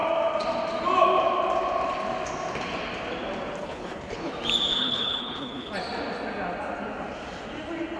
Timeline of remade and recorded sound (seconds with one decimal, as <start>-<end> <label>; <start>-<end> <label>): 0.0-3.6 recorded; 3.6-4.3 remade; 4.3-4.7 recorded; 4.7-5.7 remade; 5.7-8.0 recorded